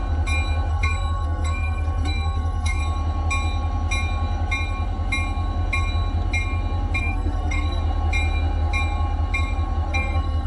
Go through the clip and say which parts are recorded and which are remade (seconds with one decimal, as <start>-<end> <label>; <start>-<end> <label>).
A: 0.0-0.7 recorded; 0.7-2.8 remade; 2.8-7.0 recorded; 7.0-7.8 remade; 7.8-9.9 recorded; 9.9-10.5 remade